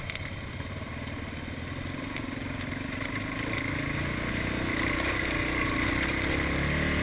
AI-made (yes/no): no